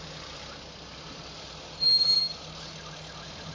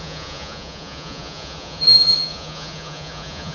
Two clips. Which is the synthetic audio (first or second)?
second